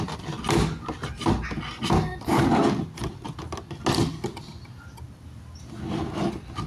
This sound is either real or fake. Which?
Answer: real